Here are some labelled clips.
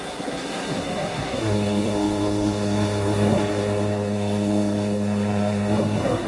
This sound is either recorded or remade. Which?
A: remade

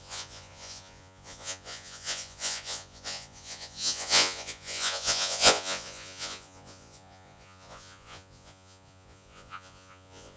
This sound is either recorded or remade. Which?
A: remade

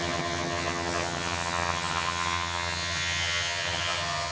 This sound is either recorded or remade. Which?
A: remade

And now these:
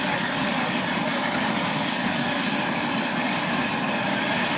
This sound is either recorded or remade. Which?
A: remade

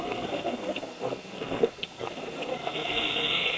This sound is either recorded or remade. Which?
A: remade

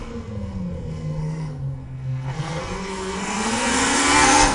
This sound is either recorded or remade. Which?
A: remade